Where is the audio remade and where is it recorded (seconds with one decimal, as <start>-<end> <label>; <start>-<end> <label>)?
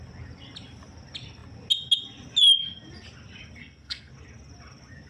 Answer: 0.0-3.6 recorded; 3.6-4.1 remade; 4.1-5.1 recorded